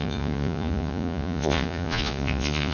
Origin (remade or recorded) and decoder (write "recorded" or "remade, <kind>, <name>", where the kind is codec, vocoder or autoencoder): remade, vocoder, Vocos